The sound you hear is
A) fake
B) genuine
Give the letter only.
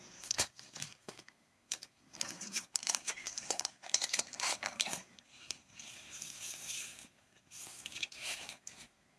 A